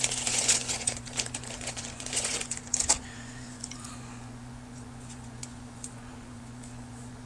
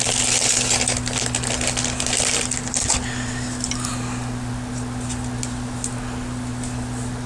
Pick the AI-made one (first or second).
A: first